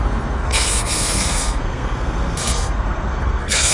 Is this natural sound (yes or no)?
no